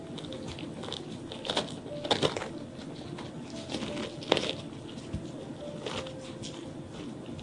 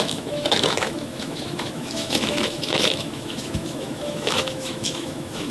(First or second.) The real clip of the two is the first